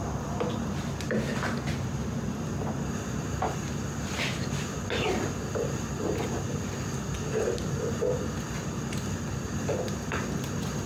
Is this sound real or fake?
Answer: real